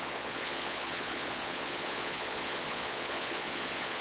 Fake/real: fake